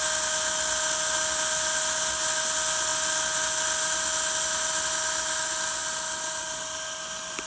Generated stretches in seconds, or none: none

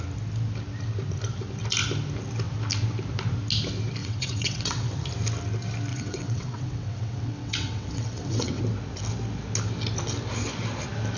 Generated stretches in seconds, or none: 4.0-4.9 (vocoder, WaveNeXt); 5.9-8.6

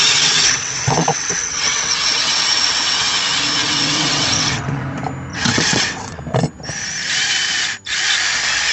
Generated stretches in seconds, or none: 0.0-3.1 (vocoder, WaveNeXt); 3.6-4.8; 5.3-6.2

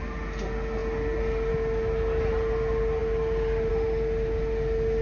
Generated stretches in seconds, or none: none

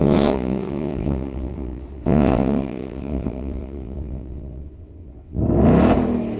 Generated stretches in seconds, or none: 0.0-5.4 (vocoder, WaveNeXt)

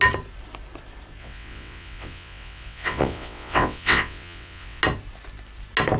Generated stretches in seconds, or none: 1.2-4.8 (vocoder, WaveNeXt)